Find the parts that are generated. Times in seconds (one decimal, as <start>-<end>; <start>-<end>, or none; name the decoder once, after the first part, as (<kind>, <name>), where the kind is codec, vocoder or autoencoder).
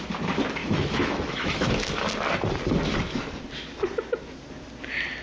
0.6-1.7 (autoencoder, DAC-VAE)